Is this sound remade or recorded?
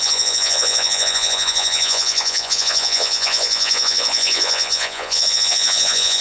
remade